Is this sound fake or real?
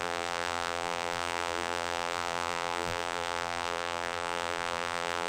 fake